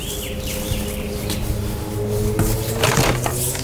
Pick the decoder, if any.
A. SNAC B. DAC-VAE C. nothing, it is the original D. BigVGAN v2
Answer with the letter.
C